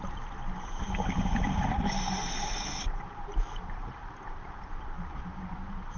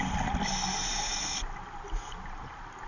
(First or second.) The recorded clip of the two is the second